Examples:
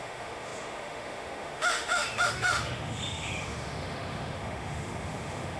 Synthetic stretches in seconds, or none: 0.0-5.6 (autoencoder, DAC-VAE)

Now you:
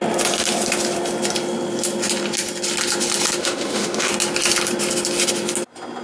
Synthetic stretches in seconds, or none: 3.4-4.1 (autoencoder, DAC-VAE)

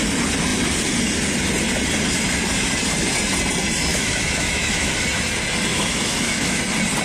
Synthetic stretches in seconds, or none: 3.9-4.9 (autoencoder, DAC-VAE); 5.7-6.6

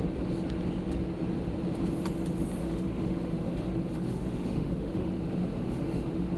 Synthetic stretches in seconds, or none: 2.6-6.4 (autoencoder, DAC-VAE)

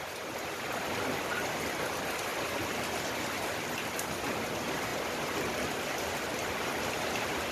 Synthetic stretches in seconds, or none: none